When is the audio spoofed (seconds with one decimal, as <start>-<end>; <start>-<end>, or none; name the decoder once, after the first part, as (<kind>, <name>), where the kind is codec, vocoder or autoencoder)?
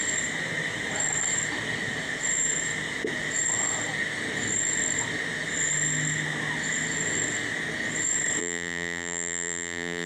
8.4-10.1 (vocoder, BigVGAN v2)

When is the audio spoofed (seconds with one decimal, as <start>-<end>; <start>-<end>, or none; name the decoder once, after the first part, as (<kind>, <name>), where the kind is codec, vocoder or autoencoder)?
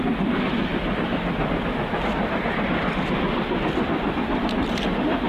0.0-5.3 (vocoder, BigVGAN v2)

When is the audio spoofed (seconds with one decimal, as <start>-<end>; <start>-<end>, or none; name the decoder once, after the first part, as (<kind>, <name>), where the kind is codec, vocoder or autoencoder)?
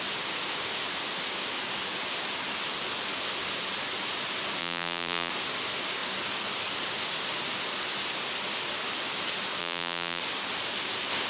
4.6-5.3 (vocoder, BigVGAN v2); 9.6-10.2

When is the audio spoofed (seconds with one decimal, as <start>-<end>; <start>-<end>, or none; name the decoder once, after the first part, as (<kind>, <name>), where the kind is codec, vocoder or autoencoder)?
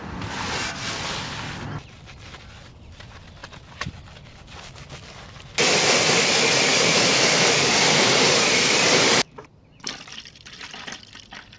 3.4-3.9 (vocoder, BigVGAN v2); 6.7-11.0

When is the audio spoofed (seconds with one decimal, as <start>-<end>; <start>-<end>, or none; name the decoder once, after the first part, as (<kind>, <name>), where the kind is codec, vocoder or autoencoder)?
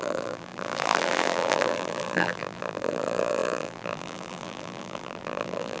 0.0-5.8 (vocoder, BigVGAN v2)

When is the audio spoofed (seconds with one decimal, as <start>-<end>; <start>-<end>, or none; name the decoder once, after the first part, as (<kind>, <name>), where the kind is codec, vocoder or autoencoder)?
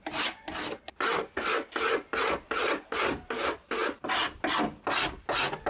none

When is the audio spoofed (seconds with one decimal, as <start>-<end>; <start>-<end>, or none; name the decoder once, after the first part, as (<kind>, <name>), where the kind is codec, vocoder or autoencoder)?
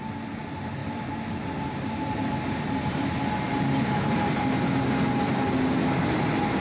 0.8-4.8 (vocoder, BigVGAN v2)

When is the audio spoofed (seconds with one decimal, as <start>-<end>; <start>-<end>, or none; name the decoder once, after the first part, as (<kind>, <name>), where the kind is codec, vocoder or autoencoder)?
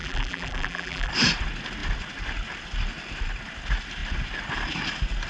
0.0-1.1 (vocoder, BigVGAN v2)